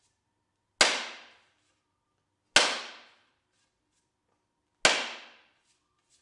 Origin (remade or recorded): recorded